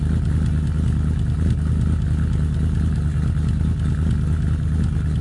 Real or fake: real